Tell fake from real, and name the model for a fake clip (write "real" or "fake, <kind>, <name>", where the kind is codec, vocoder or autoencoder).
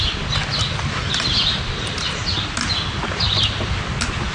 real